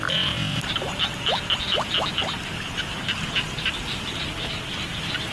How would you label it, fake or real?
real